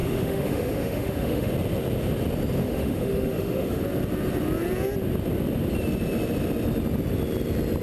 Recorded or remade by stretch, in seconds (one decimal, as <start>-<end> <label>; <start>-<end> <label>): 0.0-1.5 remade; 1.5-2.6 recorded; 2.6-3.8 remade; 3.8-7.8 recorded